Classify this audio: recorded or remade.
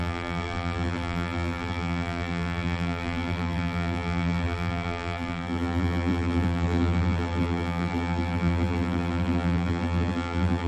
remade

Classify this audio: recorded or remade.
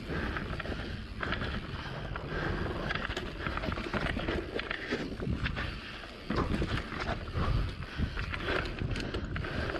recorded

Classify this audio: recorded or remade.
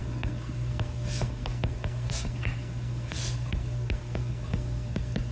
remade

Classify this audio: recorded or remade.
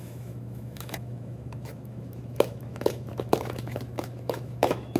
remade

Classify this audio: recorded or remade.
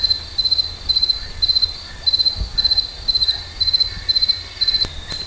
recorded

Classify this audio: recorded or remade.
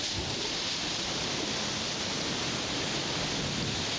recorded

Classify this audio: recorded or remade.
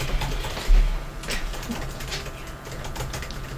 recorded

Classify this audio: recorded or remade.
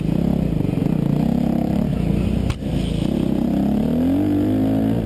recorded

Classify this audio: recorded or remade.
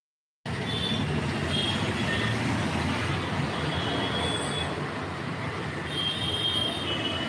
recorded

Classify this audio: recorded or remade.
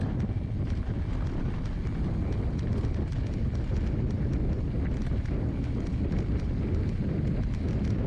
recorded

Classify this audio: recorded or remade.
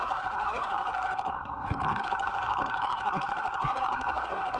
remade